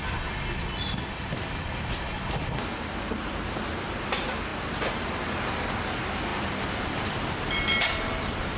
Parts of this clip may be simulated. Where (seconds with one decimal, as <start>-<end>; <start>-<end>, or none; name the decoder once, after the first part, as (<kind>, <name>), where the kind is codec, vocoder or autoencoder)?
none